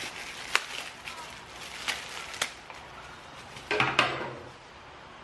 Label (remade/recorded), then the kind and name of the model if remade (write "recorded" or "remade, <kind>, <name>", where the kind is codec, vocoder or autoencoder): recorded